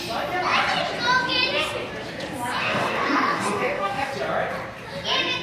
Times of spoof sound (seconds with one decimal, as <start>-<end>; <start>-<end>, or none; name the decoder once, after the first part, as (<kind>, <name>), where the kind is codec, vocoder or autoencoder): 2.6-4.1 (codec, DAC)